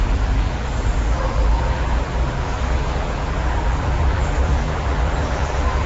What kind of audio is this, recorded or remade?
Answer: remade